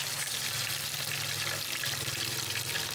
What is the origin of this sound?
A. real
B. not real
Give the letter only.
A